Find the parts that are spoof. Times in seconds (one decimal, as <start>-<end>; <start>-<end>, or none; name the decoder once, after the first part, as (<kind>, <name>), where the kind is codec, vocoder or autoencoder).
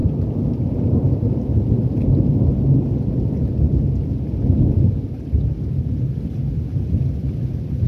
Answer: 6.4-7.3 (vocoder, BigVGAN v2)